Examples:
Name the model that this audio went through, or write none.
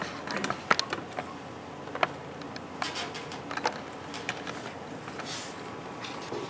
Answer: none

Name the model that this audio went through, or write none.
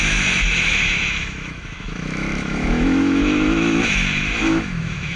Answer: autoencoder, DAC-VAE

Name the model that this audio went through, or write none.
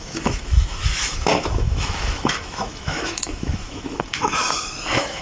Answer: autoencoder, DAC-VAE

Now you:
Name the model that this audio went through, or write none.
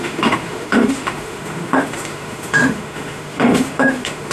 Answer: autoencoder, DAC-VAE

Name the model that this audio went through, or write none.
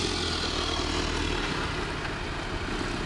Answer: none